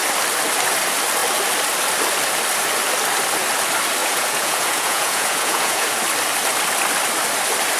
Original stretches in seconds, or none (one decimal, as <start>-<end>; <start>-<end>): 0.0-4.0; 6.0-7.8